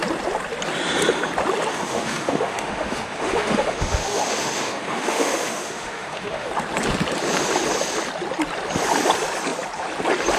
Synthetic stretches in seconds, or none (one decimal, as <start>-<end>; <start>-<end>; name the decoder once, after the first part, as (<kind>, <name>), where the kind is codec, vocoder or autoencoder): 1.7-6.5 (autoencoder, DAC-VAE)